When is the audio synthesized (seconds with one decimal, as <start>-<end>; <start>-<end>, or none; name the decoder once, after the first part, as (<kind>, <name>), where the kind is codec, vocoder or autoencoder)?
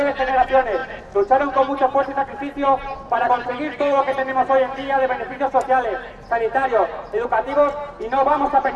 none